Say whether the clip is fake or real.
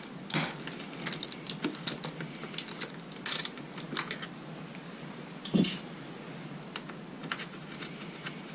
real